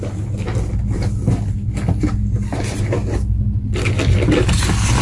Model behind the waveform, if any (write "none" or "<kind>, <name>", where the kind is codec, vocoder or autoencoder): none